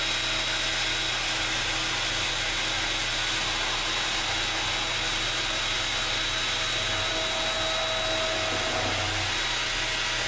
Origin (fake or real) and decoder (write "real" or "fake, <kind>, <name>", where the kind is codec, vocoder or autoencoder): real